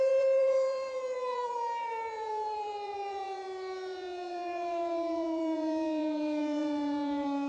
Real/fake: fake